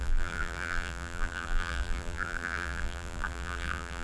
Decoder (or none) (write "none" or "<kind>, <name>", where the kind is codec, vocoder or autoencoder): vocoder, BigVGAN v2